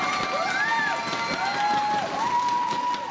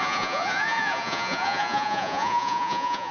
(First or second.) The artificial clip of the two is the second